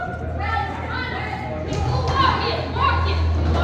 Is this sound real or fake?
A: real